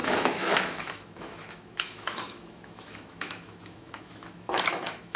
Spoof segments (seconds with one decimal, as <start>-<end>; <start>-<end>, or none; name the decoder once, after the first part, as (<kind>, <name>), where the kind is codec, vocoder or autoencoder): 0.0-5.2 (autoencoder, DAC-VAE)